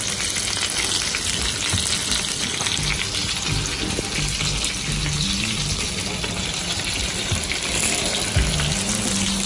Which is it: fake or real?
real